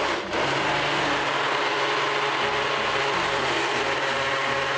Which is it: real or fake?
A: real